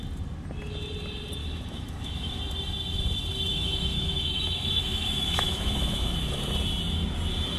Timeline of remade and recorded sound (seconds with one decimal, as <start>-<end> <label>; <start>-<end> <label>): 0.0-1.4 recorded; 1.4-2.4 remade; 2.4-3.5 recorded; 3.5-6.4 remade; 6.4-7.6 recorded